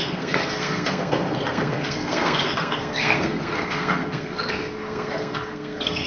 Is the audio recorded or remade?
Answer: remade